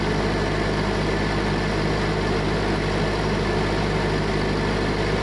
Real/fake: real